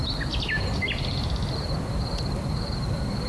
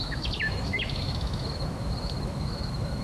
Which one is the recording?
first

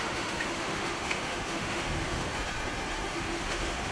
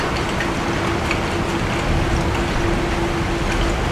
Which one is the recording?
second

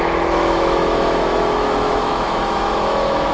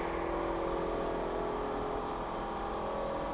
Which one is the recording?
second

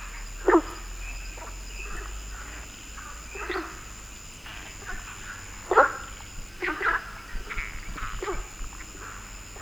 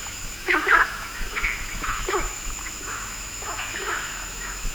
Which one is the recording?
first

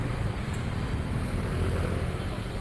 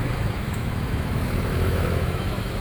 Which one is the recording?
first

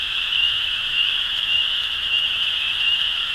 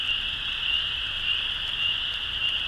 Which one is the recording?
second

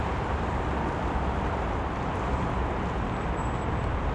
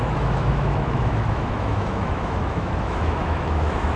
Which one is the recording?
first